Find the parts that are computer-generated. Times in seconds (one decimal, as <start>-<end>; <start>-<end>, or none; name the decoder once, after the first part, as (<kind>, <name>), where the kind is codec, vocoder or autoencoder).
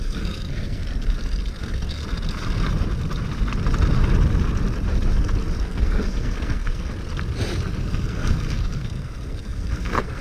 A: 0.0-0.8 (codec, SNAC); 1.6-2.0; 5.6-6.9; 7.8-10.2